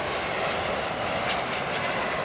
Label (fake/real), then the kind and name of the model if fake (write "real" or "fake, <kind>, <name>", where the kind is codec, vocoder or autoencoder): real